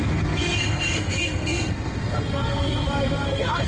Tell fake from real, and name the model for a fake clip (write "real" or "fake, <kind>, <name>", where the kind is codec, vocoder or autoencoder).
fake, codec, SNAC